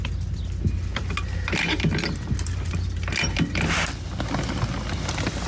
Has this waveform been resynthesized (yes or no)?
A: no